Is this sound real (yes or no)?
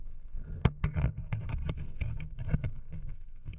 no